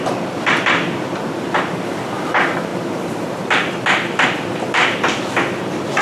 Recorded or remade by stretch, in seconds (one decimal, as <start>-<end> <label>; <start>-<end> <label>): 0.0-6.0 remade